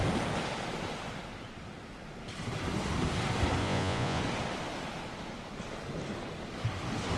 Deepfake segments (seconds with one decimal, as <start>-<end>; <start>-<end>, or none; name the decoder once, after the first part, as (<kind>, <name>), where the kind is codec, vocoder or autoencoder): 3.6-4.2 (vocoder, Vocos)